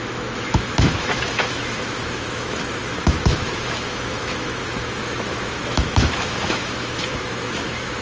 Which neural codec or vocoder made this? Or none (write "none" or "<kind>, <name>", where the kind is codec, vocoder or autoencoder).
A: autoencoder, DAC-VAE